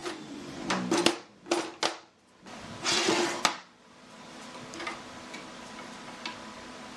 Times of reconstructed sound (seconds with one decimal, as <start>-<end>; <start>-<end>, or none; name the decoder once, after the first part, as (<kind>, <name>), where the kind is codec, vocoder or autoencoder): 0.0-0.7 (vocoder, Vocos)